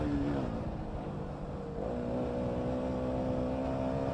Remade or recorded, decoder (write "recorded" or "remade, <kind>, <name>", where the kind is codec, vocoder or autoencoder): recorded